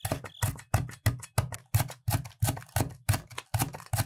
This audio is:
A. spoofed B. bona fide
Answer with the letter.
B